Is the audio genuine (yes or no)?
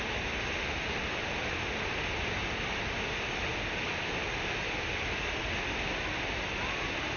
yes